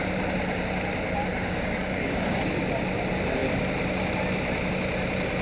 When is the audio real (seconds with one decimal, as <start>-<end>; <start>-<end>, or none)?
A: 0.0-1.3; 2.4-5.4